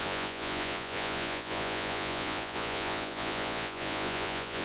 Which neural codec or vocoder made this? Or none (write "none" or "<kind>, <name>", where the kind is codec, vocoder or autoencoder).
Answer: vocoder, Vocos